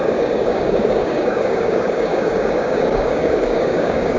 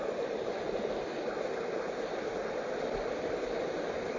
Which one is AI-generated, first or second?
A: first